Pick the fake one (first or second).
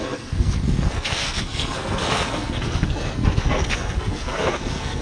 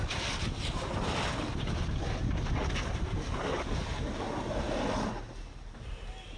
first